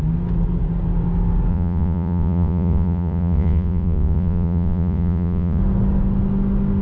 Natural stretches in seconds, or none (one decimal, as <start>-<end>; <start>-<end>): 0.0-1.5; 5.6-6.8